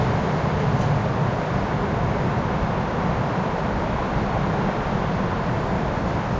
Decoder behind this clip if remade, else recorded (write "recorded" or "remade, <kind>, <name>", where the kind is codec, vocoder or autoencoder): remade, vocoder, BigVGAN v2